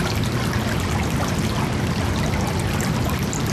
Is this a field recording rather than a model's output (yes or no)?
yes